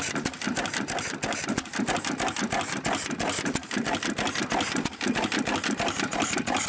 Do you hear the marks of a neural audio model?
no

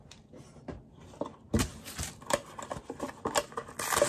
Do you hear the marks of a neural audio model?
no